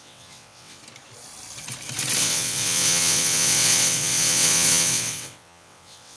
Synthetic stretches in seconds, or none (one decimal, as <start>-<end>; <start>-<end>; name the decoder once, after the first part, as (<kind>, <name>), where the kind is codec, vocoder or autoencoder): 0.0-0.8 (vocoder, WaveNeXt); 2.2-6.2